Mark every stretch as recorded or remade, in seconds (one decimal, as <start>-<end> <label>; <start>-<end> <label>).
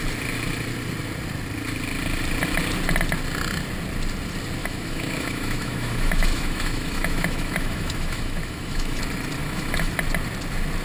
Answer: 0.0-4.6 recorded; 4.6-9.0 remade; 9.0-9.4 recorded; 9.4-9.9 remade; 9.9-10.8 recorded